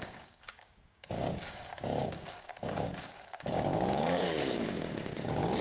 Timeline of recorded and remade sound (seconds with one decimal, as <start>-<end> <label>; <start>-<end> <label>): 0.0-5.6 remade